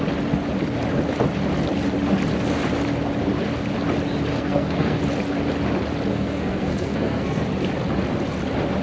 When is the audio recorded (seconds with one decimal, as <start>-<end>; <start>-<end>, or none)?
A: 0.0-4.3; 5.0-6.1; 7.4-8.8